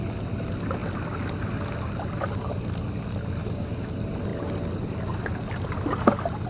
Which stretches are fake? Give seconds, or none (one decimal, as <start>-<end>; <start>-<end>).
3.4-3.9